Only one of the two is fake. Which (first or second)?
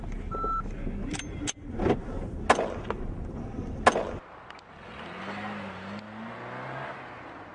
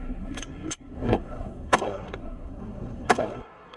second